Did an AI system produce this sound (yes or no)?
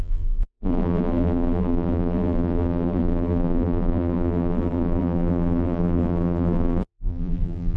yes